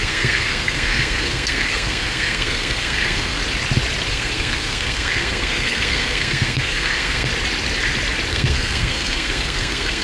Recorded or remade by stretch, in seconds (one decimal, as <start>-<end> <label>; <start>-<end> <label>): 0.0-3.4 remade; 3.4-4.1 recorded; 4.1-7.3 remade; 7.3-8.3 recorded; 8.3-10.0 remade